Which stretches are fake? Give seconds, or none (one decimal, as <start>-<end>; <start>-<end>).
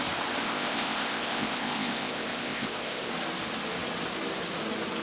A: 0.4-3.1